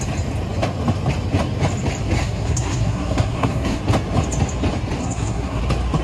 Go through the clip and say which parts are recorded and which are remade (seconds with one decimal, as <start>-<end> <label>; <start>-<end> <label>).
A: 0.0-2.2 recorded; 2.2-3.8 remade; 3.8-5.0 recorded; 5.0-5.6 remade; 5.6-6.0 recorded